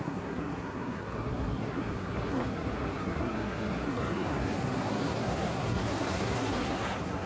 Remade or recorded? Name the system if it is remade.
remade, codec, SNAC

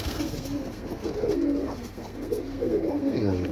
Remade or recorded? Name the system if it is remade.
remade, codec, SNAC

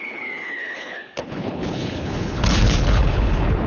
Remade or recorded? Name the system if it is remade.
remade, codec, HILCodec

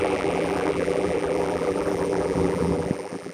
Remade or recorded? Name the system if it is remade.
remade, vocoder, BigVGAN v2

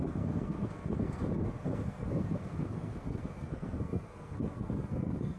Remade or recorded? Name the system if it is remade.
remade, codec, SNAC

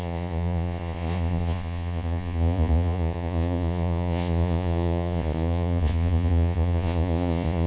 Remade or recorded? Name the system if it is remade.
remade, vocoder, Vocos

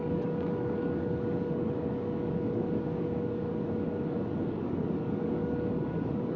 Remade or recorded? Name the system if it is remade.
remade, codec, DAC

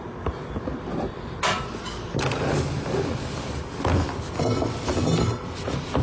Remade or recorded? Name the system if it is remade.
recorded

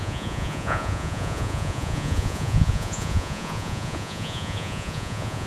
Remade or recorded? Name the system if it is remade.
remade, vocoder, Vocos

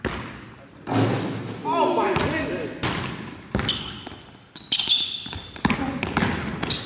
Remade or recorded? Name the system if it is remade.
recorded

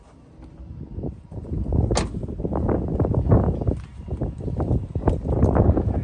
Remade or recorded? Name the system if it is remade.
recorded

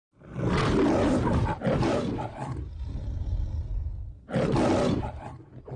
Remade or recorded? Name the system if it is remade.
remade, vocoder, BigVGAN v2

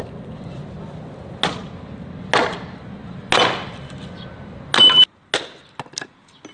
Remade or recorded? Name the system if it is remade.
recorded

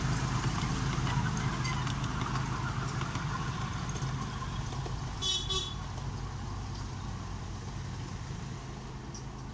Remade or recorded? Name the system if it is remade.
recorded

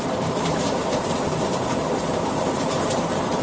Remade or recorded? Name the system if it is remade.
remade, vocoder, BigVGAN v2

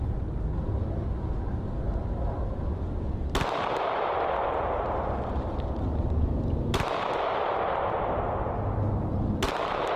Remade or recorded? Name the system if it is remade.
recorded